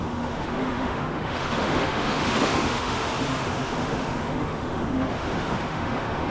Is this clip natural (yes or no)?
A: no